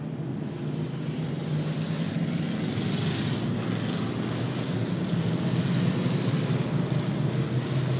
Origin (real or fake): real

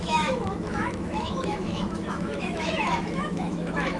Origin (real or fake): fake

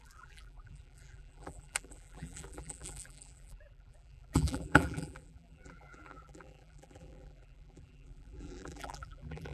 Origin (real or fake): fake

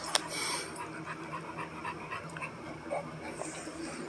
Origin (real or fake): real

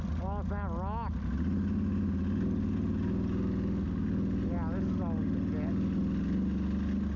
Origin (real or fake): real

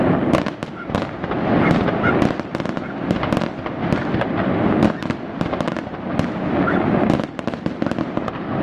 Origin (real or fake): real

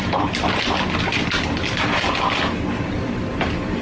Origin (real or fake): real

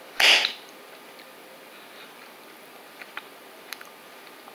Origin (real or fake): real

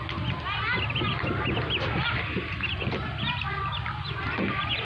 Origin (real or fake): fake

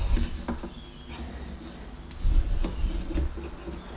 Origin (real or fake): real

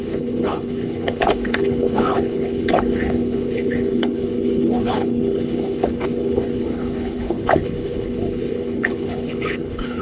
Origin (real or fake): fake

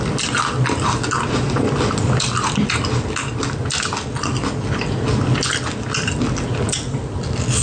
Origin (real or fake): real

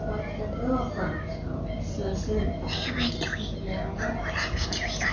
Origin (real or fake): real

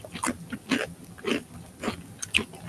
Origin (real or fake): real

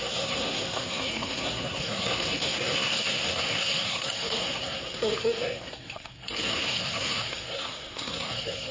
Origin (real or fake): fake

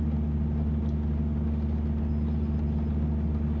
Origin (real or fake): real